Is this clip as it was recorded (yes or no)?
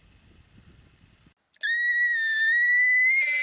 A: yes